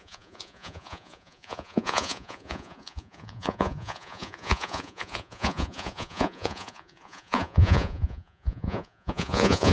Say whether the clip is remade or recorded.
remade